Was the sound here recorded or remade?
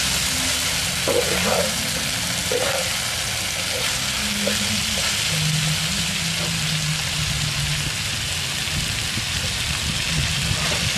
recorded